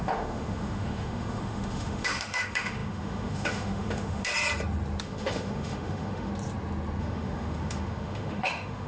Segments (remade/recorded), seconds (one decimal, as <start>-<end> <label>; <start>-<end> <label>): 0.0-4.3 remade; 4.3-5.0 recorded; 5.0-6.3 remade; 6.3-7.0 recorded; 7.0-8.9 remade